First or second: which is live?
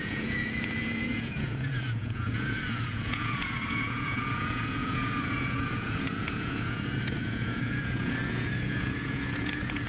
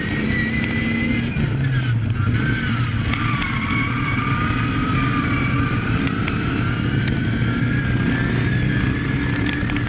second